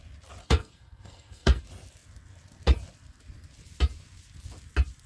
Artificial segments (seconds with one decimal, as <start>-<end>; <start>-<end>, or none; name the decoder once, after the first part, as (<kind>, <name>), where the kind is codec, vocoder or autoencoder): 0.4-1.6 (codec, SNAC)